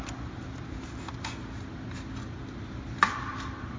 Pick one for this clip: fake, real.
real